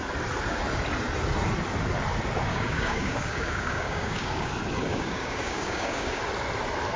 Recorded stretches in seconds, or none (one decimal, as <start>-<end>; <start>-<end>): 0.0-2.5; 4.5-4.9; 6.2-7.0